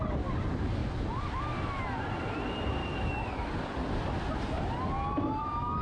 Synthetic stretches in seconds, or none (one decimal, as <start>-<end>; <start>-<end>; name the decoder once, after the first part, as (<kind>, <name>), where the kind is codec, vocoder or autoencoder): 2.8-3.5 (autoencoder, DAC-VAE)